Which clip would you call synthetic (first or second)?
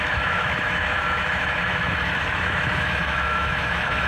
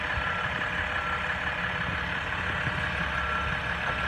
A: first